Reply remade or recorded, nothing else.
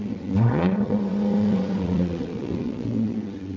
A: remade